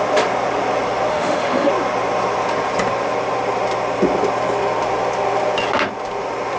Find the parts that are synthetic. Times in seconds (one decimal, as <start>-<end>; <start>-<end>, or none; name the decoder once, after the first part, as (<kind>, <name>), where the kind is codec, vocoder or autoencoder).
1.1-1.7 (autoencoder, DAC-VAE)